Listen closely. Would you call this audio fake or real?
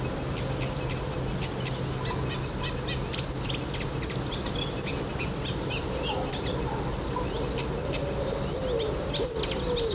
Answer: real